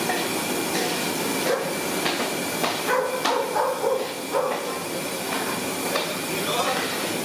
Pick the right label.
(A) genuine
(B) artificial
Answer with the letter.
A